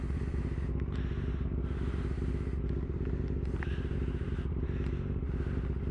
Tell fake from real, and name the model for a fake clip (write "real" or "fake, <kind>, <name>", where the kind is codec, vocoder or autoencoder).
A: real